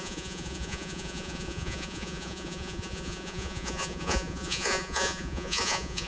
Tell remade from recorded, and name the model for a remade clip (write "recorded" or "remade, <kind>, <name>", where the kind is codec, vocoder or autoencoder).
remade, vocoder, Vocos